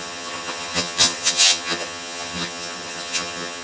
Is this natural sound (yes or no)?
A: no